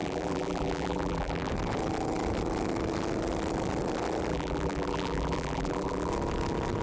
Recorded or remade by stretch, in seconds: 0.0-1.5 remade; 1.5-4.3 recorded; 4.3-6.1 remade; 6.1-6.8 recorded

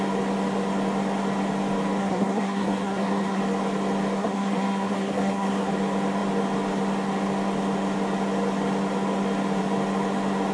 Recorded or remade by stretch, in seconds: 0.0-2.0 recorded; 2.0-3.4 remade; 3.4-4.2 recorded; 4.2-5.7 remade; 5.7-10.5 recorded

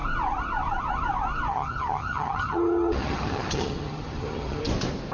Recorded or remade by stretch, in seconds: 0.0-1.5 recorded; 1.5-4.6 remade; 4.6-5.1 recorded

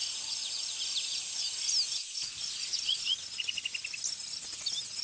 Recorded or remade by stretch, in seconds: 0.0-1.9 recorded; 1.9-3.6 remade; 3.6-5.0 recorded

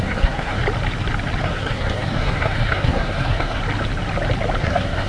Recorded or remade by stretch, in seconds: 0.0-0.6 remade; 0.6-1.4 recorded; 1.4-3.6 remade; 3.6-4.6 recorded; 4.6-5.1 remade

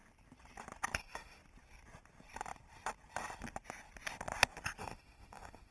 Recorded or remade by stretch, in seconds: 0.0-1.0 recorded; 1.0-1.4 remade; 1.4-4.8 recorded; 4.8-5.7 remade